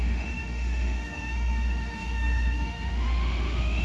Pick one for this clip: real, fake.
fake